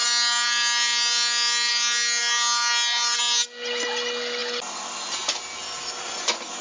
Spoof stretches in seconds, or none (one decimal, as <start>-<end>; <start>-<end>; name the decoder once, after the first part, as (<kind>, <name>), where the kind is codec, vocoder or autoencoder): none